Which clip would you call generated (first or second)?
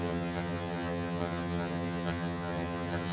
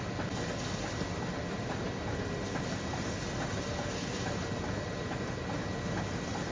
first